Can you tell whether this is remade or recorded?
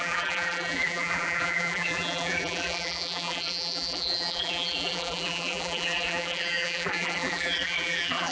remade